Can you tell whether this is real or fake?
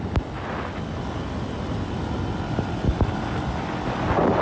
real